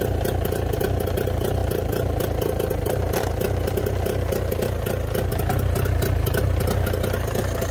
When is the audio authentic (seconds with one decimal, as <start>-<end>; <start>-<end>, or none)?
0.0-7.7